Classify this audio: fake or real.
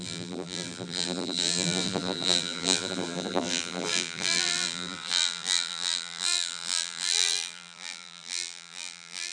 fake